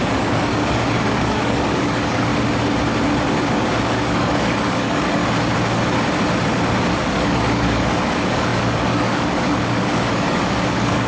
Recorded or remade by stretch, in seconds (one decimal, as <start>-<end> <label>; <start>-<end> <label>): 0.0-2.3 remade; 2.3-3.5 recorded; 3.5-5.2 remade; 5.2-6.9 recorded; 6.9-11.1 remade